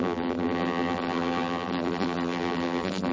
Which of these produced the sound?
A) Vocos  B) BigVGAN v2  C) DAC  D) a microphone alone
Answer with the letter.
B